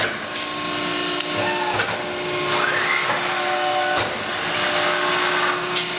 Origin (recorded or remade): recorded